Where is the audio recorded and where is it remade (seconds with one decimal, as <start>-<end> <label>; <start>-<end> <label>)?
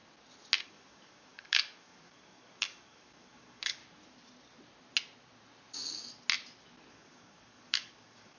0.0-0.6 recorded; 0.6-3.8 remade; 3.8-6.9 recorded; 6.9-8.4 remade